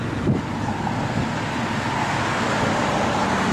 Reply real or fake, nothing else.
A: real